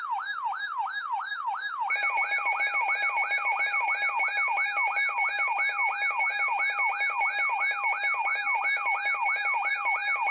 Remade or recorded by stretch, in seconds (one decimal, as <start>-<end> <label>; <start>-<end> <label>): 0.0-10.3 recorded